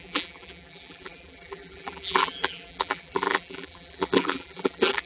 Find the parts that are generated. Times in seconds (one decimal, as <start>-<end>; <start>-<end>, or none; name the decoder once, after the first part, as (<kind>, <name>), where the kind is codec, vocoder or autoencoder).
0.0-5.1 (vocoder, BigVGAN v2)